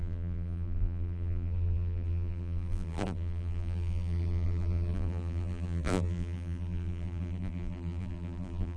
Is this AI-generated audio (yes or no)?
yes